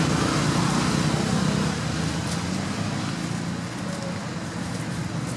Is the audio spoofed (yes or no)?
no